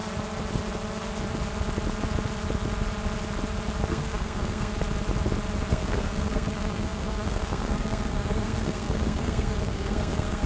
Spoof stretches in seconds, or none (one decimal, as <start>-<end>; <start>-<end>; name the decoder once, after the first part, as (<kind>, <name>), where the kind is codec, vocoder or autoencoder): 3.9-4.7 (codec, SNAC); 5.7-10.5